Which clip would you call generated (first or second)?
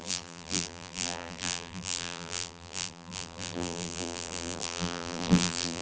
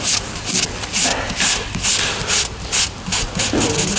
first